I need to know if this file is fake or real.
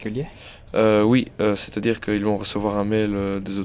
real